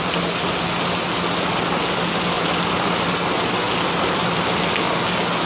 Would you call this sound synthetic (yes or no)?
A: no